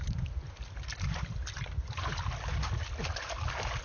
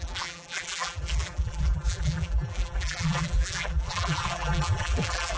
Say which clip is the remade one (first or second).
second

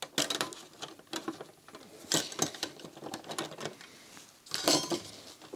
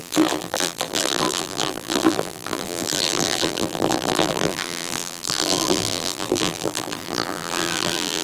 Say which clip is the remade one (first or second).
second